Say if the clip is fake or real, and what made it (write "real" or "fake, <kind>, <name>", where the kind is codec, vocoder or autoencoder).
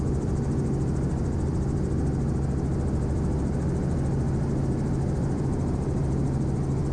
real